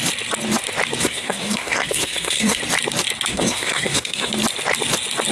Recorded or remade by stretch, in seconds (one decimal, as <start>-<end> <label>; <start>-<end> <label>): 0.0-1.0 recorded; 1.0-2.6 remade; 2.6-3.3 recorded; 3.3-4.3 remade; 4.3-5.3 recorded